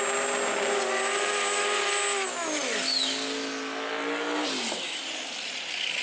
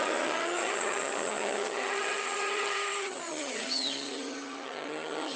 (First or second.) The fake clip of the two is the second